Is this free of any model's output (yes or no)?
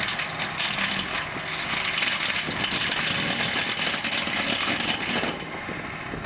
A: yes